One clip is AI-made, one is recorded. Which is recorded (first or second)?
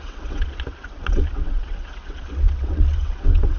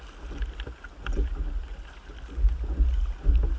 second